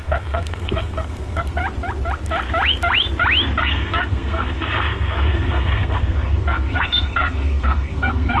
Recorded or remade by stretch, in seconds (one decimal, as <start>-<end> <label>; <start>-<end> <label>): 0.0-1.6 remade; 1.6-3.6 recorded; 3.6-8.4 remade